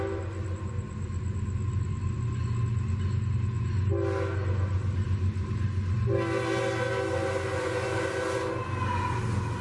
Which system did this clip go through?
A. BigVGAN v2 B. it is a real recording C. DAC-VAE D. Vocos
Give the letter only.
B